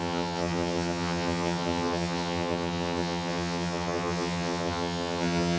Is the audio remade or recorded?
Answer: remade